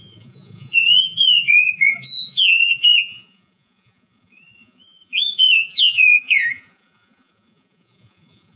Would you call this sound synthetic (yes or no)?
yes